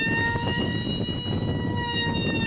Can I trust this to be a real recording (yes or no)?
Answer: yes